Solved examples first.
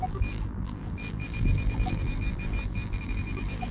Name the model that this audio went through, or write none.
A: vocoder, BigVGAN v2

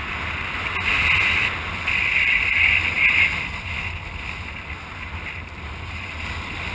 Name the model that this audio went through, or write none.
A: none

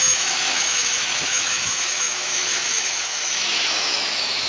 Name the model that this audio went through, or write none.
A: autoencoder, DAC-VAE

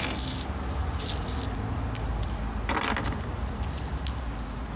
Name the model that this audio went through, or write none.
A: none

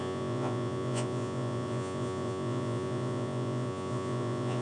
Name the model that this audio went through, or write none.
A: vocoder, Vocos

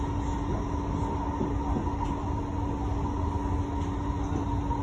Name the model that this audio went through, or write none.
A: none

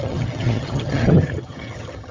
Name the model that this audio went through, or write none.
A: vocoder, HiFi-GAN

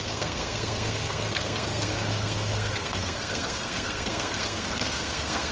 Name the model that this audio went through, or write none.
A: codec, SNAC